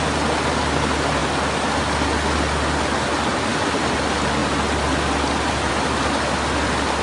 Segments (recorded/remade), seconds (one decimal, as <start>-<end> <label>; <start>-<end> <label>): 0.0-7.0 recorded